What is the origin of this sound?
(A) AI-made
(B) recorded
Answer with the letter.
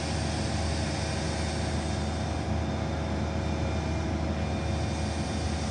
B